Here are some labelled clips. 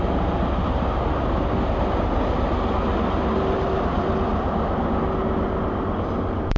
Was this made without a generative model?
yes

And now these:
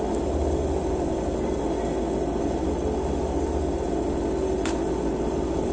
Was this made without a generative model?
yes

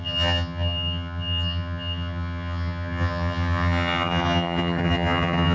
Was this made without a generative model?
no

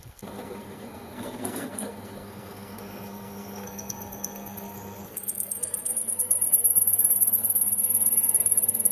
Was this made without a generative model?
no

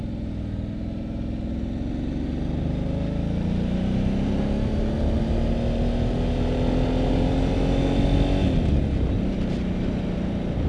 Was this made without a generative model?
yes